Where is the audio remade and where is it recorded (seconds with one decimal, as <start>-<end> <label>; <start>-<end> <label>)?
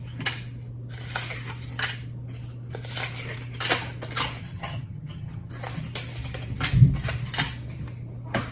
0.0-4.4 recorded; 4.4-5.5 remade; 5.5-8.5 recorded